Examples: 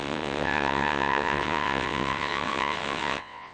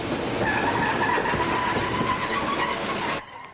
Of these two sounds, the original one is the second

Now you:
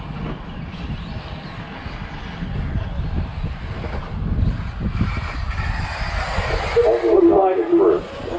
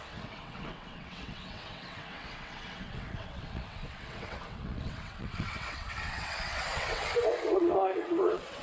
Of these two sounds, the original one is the first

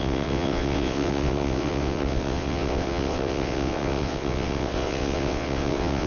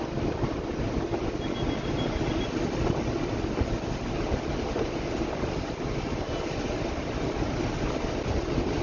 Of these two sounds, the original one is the second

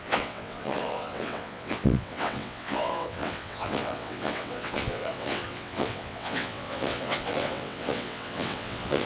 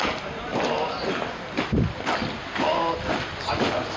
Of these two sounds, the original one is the second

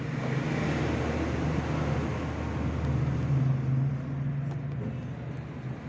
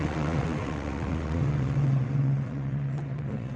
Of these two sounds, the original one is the first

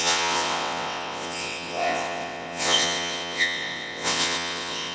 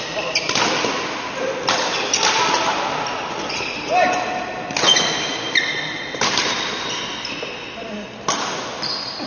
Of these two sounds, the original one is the second